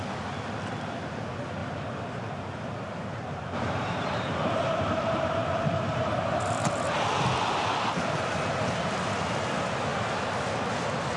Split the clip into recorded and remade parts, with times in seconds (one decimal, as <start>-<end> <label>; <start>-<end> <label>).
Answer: 0.0-1.6 recorded; 1.6-6.7 remade; 6.7-11.2 recorded